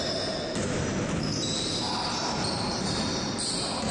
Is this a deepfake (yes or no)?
no